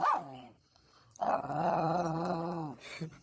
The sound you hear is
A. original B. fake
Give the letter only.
B